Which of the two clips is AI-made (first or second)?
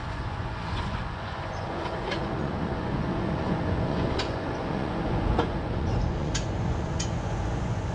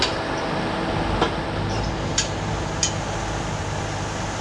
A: first